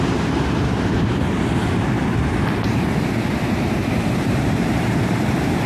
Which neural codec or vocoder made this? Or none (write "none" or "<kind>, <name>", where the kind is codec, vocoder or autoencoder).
vocoder, BigVGAN v2